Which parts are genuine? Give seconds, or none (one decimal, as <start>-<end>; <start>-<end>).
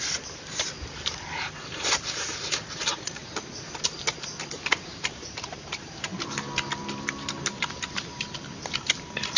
3.2-4.7; 6.1-6.7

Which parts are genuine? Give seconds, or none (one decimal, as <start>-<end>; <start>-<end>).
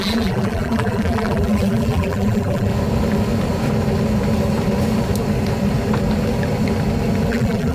2.7-7.3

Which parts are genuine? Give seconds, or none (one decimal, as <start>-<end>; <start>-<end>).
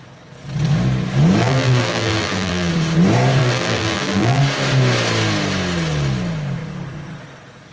0.0-1.4; 2.7-3.4; 4.4-7.7